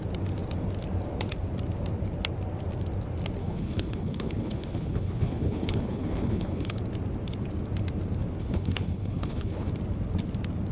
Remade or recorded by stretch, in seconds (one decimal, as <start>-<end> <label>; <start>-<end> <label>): 0.0-3.4 recorded; 3.4-6.8 remade; 6.8-8.4 recorded; 8.4-9.7 remade; 9.7-10.7 recorded